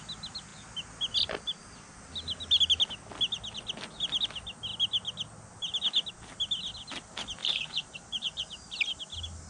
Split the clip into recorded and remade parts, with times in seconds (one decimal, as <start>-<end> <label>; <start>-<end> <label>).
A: 0.0-7.4 recorded; 7.4-9.0 remade; 9.0-9.5 recorded